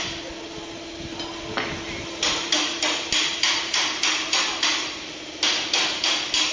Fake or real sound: real